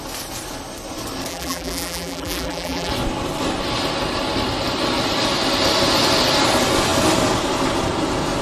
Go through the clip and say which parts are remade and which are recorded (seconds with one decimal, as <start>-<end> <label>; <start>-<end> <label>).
0.0-1.3 recorded; 1.3-2.9 remade; 2.9-8.4 recorded